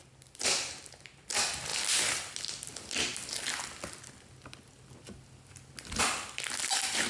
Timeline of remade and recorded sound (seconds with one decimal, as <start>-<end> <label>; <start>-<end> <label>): 0.0-7.1 recorded